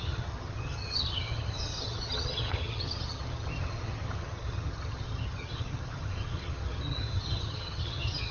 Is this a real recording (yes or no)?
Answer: no